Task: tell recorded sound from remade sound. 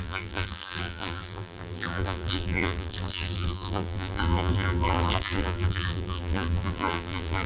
remade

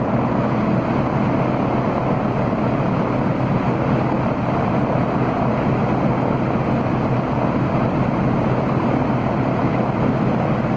recorded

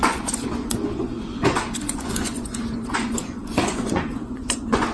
remade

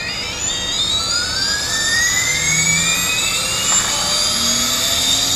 recorded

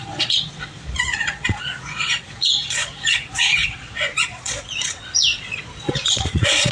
remade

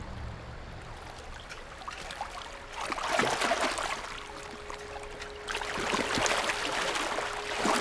recorded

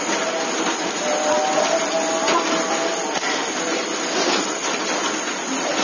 recorded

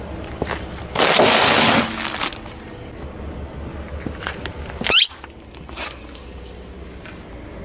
recorded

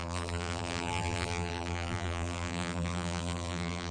remade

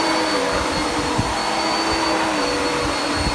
recorded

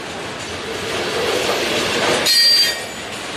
recorded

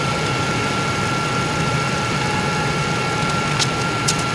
recorded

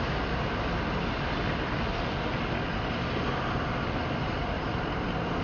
recorded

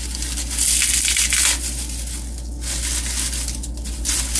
recorded